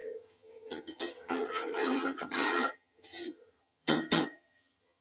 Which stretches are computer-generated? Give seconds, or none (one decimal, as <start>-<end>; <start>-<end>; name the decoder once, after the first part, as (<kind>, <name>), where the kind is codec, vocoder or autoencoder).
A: 0.0-5.0 (vocoder, HiFi-GAN)